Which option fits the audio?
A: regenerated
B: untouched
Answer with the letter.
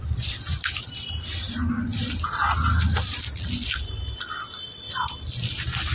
B